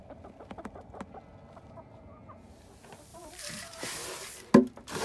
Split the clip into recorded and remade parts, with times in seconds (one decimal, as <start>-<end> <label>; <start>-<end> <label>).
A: 0.0-3.1 recorded; 3.1-3.9 remade; 3.9-5.0 recorded